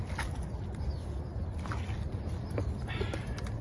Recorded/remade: recorded